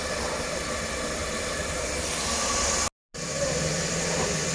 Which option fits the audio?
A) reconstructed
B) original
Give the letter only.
B